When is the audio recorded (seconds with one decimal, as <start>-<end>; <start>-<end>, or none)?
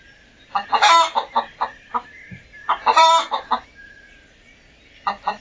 0.0-2.6; 3.5-5.4